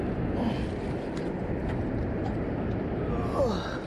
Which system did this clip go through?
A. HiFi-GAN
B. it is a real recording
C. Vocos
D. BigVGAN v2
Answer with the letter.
B